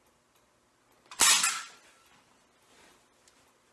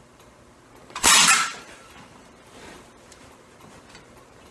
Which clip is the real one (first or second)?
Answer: first